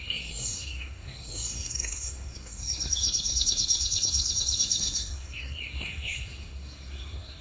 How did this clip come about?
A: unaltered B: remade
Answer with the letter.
B